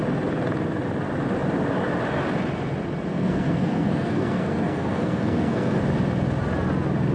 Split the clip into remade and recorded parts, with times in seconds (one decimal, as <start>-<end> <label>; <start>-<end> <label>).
0.0-3.1 recorded; 3.1-5.8 remade; 5.8-7.1 recorded